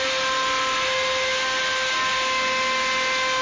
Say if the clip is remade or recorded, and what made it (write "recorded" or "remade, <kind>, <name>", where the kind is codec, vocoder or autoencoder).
recorded